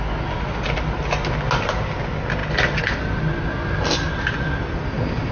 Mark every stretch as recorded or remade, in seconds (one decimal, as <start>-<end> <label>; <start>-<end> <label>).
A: 0.0-5.3 recorded